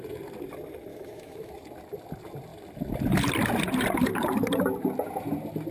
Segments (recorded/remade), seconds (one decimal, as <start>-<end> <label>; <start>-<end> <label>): 0.0-0.9 recorded; 0.9-1.5 remade; 1.5-5.7 recorded